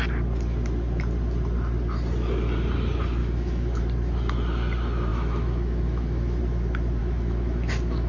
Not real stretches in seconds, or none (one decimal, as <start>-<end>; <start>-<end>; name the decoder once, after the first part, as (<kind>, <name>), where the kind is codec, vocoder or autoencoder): 3.2-3.8 (autoencoder, DAC-VAE); 5.1-6.4; 7.0-8.1